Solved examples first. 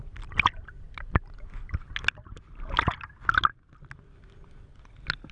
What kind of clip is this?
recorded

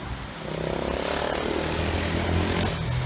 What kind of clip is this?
recorded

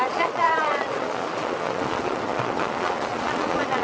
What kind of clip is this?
remade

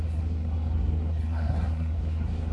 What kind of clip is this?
remade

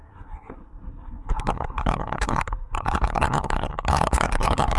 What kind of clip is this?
remade